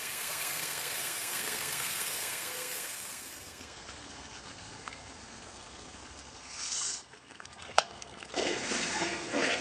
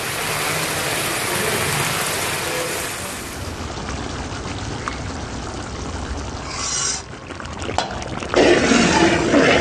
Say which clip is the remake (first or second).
first